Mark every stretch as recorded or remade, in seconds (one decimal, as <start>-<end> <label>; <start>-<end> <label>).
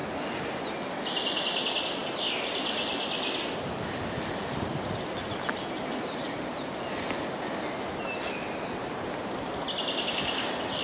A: 0.0-10.8 recorded